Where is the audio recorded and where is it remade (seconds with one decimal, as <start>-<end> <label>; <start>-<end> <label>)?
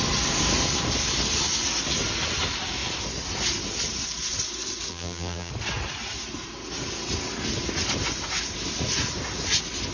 0.0-4.9 recorded; 4.9-5.5 remade; 5.5-9.9 recorded